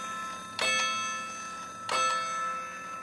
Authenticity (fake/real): real